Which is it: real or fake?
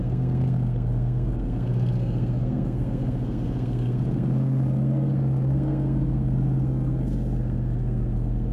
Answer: fake